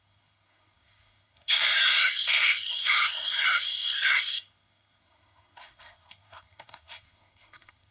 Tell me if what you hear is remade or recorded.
remade